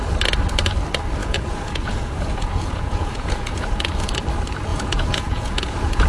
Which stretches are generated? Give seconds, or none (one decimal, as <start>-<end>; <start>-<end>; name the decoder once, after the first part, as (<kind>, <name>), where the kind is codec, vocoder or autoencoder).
1.2-3.9 (vocoder, Vocos); 4.7-6.1